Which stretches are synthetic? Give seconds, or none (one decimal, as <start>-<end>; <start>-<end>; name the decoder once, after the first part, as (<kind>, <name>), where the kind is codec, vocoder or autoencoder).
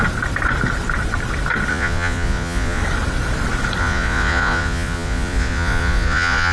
1.7-2.8 (vocoder, Vocos); 3.8-6.5